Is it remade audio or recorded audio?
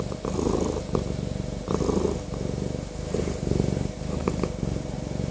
recorded